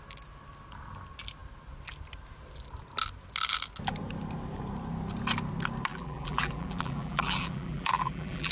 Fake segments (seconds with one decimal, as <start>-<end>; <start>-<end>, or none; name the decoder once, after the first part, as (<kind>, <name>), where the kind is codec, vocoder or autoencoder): 5.9-8.5 (vocoder, BigVGAN v2)